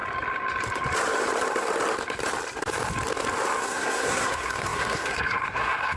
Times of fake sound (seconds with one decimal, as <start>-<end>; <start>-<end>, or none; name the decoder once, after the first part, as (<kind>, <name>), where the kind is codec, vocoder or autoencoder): 3.6-6.0 (codec, SNAC)